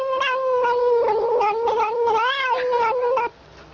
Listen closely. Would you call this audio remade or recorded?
recorded